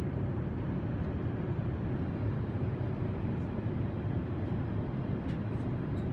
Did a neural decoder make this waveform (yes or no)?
no